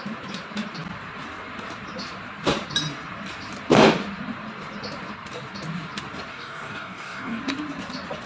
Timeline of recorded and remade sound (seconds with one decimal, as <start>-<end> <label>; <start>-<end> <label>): 0.0-6.3 recorded; 6.3-7.4 remade; 7.4-8.3 recorded